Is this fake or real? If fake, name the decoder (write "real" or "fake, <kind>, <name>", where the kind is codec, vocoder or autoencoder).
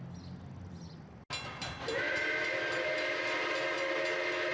real